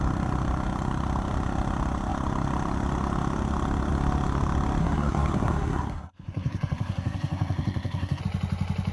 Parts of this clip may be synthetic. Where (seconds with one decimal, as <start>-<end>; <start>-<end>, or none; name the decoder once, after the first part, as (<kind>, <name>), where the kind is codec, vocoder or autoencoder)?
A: 4.8-8.2 (codec, SNAC)